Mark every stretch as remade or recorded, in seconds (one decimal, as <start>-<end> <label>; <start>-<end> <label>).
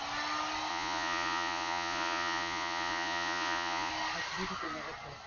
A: 0.0-0.7 recorded; 0.7-3.9 remade; 3.9-5.3 recorded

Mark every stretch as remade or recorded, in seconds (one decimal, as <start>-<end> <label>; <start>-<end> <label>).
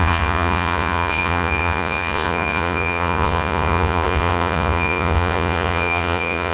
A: 0.0-6.5 remade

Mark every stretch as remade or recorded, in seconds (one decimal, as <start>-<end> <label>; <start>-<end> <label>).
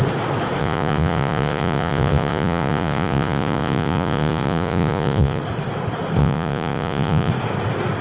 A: 0.0-0.6 recorded; 0.6-5.4 remade; 5.4-6.2 recorded; 6.2-7.3 remade; 7.3-8.0 recorded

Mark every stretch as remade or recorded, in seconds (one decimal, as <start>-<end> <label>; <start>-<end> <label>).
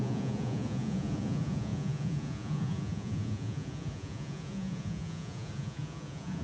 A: 0.0-6.4 remade